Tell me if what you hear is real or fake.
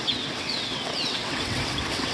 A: fake